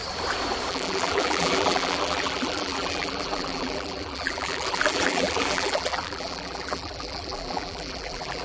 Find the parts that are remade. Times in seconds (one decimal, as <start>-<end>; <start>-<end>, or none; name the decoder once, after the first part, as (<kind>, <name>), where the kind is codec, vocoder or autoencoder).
0.7-8.4 (vocoder, BigVGAN v2)